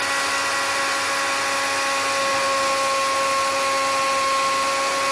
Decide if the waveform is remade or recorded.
recorded